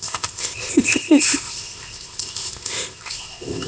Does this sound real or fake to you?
fake